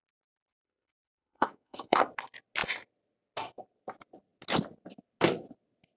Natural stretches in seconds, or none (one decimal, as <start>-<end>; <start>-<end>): 0.0-0.5; 2.0-6.0